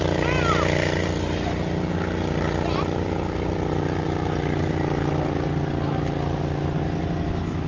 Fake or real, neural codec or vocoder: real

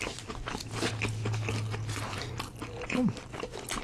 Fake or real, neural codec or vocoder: real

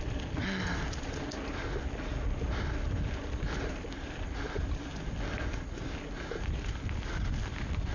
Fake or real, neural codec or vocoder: real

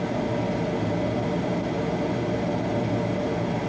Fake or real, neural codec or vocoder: real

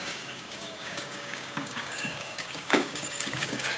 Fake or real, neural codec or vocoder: fake, codec, DAC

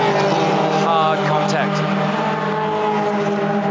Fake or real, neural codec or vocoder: real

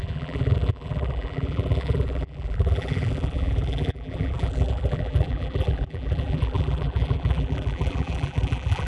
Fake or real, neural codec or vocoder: fake, vocoder, BigVGAN v2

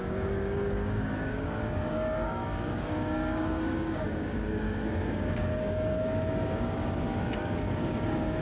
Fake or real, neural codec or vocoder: fake, codec, DAC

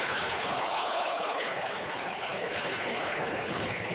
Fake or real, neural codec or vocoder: fake, codec, HILCodec